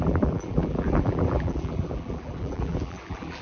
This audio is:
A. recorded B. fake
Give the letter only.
B